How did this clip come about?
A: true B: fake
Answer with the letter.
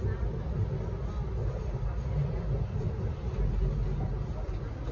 A